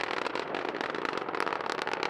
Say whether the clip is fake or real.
real